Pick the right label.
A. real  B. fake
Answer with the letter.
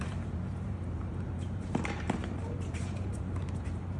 B